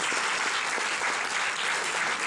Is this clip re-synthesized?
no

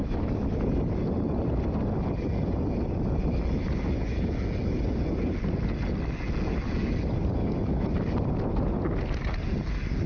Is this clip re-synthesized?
no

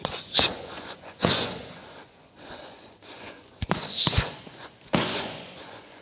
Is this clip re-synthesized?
yes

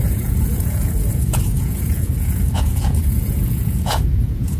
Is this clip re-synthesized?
yes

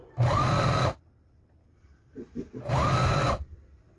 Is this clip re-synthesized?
no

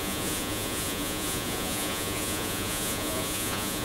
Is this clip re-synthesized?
yes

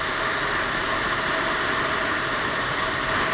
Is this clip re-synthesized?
no